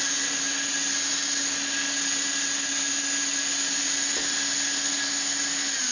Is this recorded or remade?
recorded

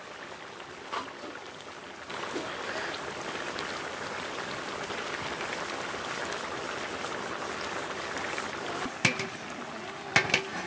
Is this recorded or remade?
recorded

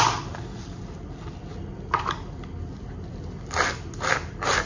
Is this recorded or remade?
recorded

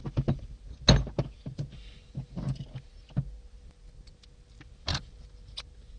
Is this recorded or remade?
recorded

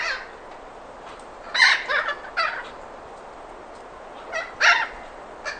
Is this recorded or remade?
recorded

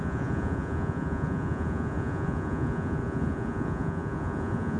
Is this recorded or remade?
remade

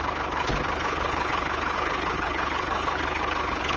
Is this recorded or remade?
remade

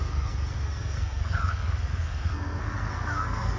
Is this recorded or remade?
remade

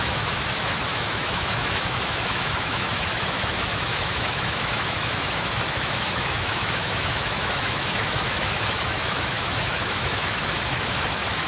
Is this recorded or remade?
remade